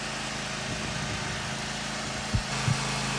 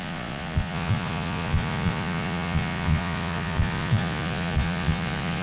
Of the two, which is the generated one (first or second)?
second